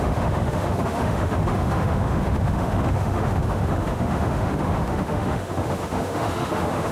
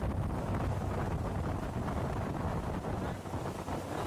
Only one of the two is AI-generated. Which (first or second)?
first